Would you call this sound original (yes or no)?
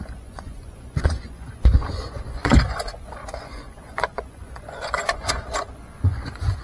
no